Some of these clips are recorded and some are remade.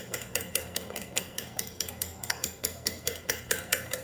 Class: remade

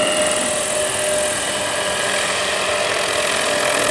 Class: recorded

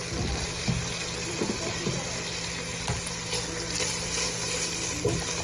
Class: recorded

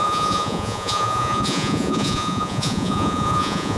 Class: remade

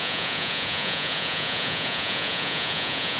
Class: remade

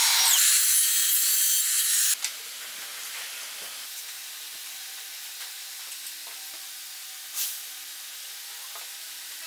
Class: recorded